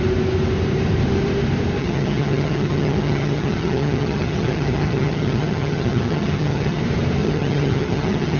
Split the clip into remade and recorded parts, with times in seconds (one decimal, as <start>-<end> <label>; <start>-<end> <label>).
0.0-1.8 recorded; 1.8-6.8 remade; 6.8-7.2 recorded; 7.2-8.4 remade